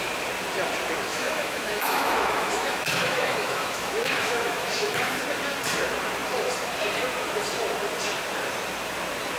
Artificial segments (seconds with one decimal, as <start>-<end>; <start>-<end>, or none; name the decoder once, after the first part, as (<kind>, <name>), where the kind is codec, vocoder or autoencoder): 1.1-5.2 (autoencoder, DAC-VAE)